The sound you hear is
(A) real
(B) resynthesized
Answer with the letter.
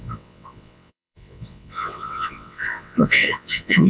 B